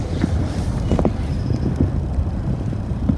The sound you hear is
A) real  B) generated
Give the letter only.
B